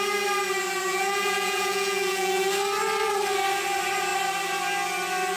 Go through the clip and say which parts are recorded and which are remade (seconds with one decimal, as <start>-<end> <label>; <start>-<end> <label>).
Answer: 0.0-0.9 recorded; 0.9-2.5 remade; 2.5-5.4 recorded